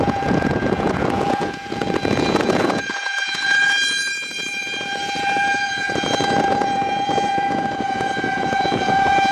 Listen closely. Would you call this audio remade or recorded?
remade